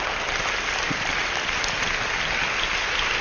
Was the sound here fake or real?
real